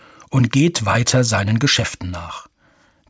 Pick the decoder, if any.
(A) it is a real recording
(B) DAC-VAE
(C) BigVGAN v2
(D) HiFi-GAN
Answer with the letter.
A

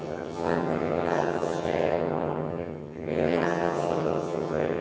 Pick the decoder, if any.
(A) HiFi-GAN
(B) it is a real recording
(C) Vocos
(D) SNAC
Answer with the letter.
A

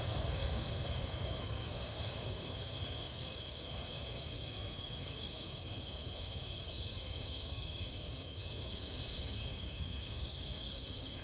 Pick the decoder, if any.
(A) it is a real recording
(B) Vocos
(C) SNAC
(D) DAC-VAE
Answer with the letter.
C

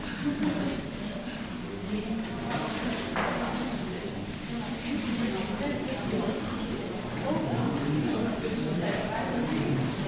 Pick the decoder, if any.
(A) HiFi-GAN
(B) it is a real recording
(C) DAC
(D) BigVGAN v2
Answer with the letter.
B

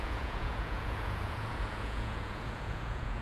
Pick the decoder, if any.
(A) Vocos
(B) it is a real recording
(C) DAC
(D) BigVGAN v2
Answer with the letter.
A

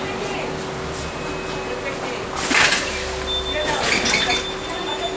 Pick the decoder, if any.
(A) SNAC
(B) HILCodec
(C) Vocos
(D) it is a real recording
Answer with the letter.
D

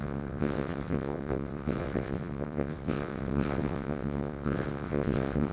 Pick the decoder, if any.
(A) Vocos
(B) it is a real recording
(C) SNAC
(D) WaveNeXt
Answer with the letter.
D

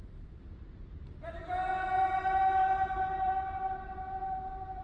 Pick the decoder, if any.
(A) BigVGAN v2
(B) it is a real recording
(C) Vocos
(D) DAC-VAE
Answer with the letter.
A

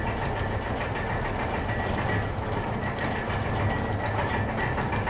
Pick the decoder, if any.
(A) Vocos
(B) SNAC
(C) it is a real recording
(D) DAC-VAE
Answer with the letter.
C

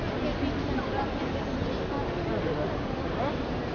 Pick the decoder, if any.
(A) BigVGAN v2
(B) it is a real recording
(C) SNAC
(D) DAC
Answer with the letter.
B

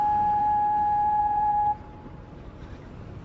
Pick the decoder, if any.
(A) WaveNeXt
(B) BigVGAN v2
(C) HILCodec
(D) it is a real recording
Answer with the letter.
B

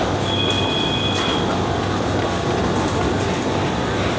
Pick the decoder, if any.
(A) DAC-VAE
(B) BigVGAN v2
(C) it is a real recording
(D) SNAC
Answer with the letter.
C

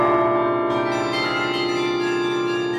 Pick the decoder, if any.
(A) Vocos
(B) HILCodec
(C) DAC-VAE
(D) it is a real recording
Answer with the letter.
D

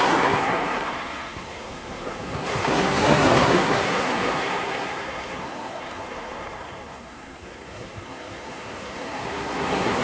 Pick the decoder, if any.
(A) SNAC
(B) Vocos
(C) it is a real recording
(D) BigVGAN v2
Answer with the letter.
A